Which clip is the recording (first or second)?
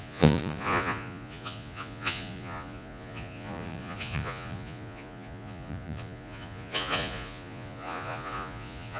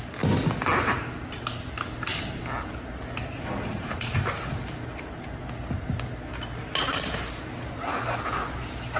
second